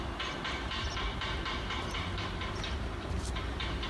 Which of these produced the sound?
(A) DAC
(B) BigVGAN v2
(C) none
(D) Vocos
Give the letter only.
B